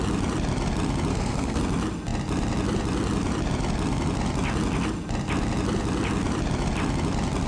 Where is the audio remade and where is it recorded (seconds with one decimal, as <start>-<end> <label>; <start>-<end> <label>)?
0.0-1.1 recorded; 1.1-1.6 remade; 1.6-7.5 recorded